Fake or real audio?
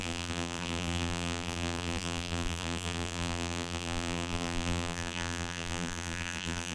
fake